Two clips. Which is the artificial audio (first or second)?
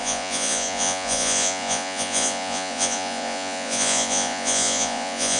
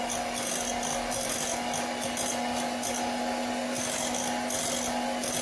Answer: first